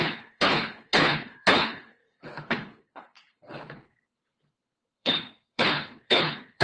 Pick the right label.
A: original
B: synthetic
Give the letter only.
B